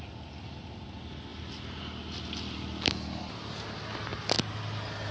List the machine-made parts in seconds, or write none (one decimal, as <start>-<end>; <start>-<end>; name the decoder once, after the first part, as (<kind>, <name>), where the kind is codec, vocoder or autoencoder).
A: none

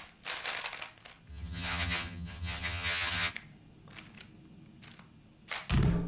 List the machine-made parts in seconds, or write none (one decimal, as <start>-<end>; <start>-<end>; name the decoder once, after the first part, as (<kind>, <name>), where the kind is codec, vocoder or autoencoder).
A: 1.3-3.3 (vocoder, HiFi-GAN)

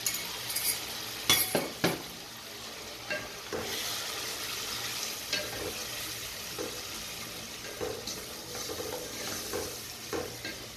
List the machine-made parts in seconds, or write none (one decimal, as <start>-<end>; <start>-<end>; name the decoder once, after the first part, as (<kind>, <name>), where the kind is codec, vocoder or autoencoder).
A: none

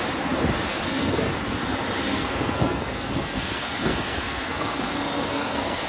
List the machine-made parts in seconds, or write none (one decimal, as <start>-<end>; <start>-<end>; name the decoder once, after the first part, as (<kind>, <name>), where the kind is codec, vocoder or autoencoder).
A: 0.7-1.3 (codec, SNAC); 2.1-5.9

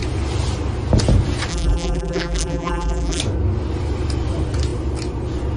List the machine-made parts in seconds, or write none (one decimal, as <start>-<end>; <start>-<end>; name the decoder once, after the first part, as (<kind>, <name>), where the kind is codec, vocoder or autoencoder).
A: 1.5-3.2 (vocoder, BigVGAN v2)

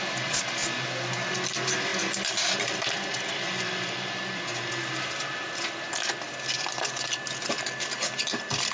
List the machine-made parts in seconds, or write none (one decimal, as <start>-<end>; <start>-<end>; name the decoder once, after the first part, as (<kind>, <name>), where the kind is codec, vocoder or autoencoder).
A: 1.9-4.7 (vocoder, BigVGAN v2)

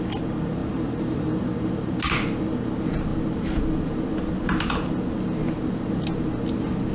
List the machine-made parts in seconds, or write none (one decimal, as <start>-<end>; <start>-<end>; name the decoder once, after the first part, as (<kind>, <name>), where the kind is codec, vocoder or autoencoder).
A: 0.6-1.3 (vocoder, BigVGAN v2)

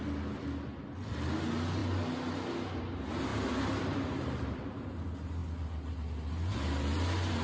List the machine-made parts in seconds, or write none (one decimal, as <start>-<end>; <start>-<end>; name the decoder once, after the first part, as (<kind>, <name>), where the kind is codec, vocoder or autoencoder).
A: 3.3-4.9 (vocoder, BigVGAN v2)